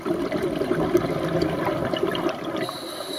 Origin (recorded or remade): recorded